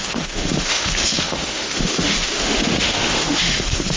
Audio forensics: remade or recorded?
remade